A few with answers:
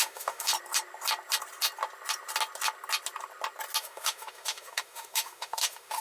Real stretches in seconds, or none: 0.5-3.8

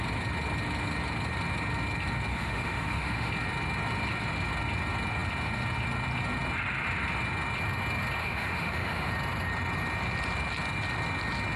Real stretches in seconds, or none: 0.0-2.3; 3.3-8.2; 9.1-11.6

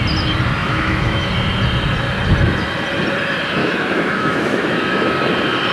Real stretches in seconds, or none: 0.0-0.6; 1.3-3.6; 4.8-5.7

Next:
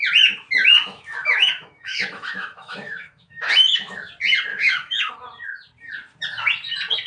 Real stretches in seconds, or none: 0.0-0.6; 4.1-4.5; 5.1-7.1

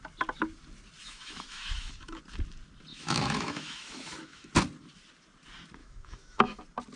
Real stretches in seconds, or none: 0.0-1.0; 2.2-2.9; 4.5-5.8; 6.6-7.0